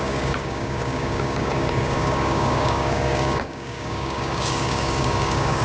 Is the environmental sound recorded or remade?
remade